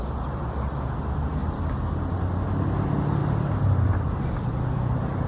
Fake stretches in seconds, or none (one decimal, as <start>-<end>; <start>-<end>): 1.4-2.1; 3.2-5.3